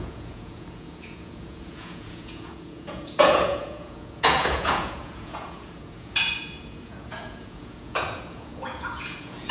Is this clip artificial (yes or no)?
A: yes